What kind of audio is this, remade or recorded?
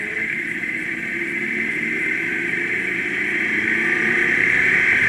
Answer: remade